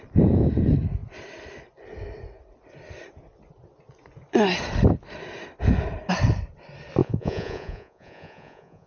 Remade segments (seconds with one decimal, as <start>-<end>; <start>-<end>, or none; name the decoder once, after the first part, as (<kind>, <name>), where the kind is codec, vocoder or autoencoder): 7.0-8.9 (vocoder, Vocos)